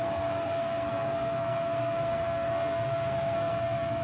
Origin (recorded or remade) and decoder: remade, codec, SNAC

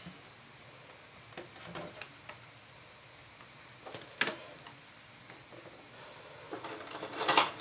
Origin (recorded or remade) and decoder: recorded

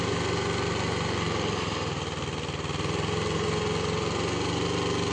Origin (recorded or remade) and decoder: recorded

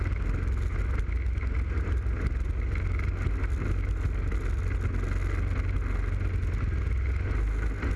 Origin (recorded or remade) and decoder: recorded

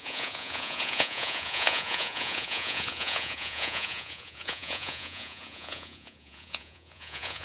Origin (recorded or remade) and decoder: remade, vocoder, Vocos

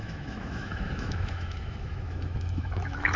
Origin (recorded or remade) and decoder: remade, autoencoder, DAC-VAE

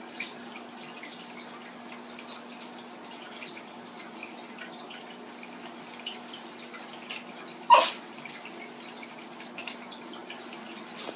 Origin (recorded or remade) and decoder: recorded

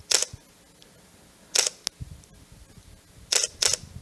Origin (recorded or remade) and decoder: recorded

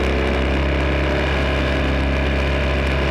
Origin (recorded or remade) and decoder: recorded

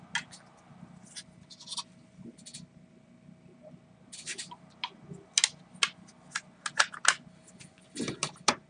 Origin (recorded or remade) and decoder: recorded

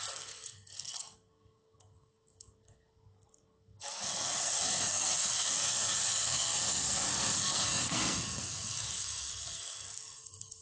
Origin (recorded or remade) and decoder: remade, codec, SNAC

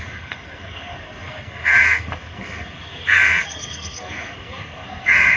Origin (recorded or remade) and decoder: remade, codec, SNAC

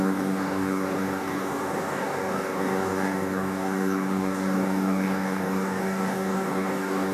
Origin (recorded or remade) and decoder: remade, codec, DAC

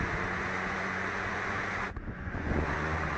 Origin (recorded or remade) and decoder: remade, vocoder, Vocos